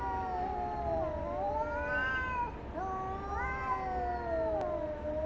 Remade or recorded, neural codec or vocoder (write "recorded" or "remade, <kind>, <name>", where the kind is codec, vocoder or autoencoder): recorded